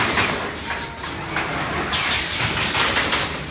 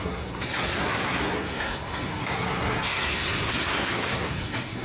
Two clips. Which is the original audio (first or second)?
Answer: first